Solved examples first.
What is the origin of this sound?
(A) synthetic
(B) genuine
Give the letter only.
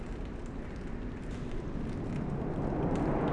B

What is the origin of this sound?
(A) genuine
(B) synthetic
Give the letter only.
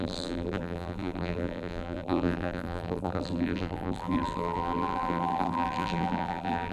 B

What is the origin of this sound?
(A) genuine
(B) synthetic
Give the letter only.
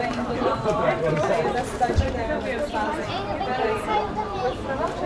B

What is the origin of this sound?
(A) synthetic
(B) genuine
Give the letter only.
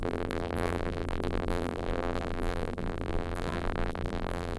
A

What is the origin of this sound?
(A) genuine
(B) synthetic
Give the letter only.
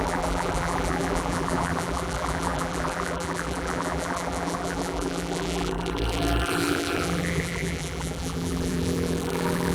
B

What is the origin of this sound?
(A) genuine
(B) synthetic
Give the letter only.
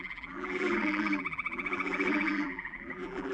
B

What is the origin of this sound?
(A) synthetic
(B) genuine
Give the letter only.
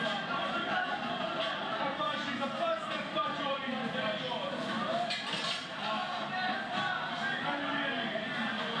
A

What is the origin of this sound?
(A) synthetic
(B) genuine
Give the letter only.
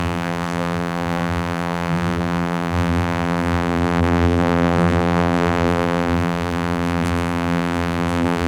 A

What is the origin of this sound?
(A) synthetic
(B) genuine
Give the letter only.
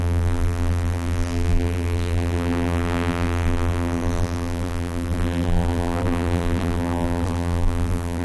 A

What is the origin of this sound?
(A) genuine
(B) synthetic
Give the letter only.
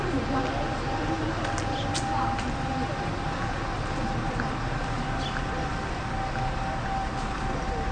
A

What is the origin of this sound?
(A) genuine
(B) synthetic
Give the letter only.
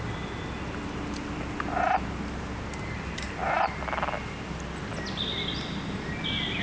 A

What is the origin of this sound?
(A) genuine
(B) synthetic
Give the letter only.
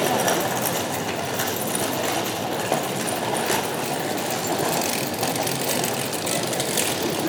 A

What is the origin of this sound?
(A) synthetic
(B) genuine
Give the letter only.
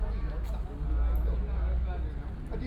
B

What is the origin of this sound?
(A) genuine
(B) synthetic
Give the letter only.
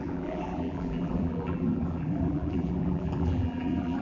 B